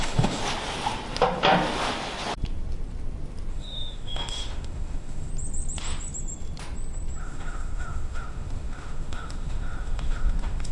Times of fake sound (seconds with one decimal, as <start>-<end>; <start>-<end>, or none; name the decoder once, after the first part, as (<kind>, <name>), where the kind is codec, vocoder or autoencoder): 0.0-0.4 (autoencoder, DAC-VAE); 3.5-5.3; 7.2-10.7